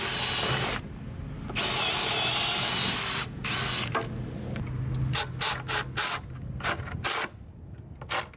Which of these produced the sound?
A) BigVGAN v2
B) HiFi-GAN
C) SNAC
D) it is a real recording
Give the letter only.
D